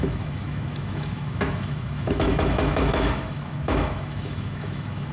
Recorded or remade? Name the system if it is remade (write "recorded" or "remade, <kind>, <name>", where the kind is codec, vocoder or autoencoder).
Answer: remade, autoencoder, DAC-VAE